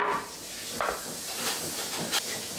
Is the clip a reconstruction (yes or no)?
no